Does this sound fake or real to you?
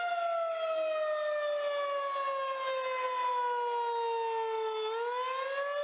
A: real